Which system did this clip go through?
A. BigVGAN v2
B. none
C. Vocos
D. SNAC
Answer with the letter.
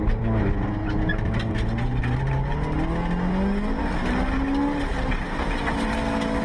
B